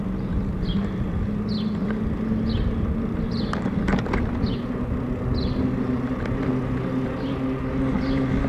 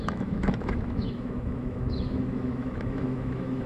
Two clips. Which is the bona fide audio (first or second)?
first